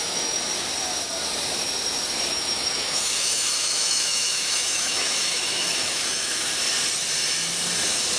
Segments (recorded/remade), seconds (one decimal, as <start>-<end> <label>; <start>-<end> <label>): 0.0-0.5 remade; 0.5-2.3 recorded; 2.3-6.5 remade; 6.5-8.2 recorded